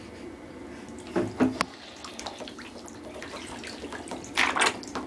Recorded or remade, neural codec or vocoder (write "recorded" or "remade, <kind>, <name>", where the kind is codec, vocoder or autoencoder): recorded